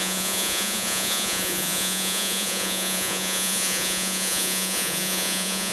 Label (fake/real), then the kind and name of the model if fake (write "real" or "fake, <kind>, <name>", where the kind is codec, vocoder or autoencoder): fake, vocoder, Vocos